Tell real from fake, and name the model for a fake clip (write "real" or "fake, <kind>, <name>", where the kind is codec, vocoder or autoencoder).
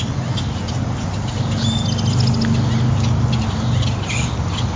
real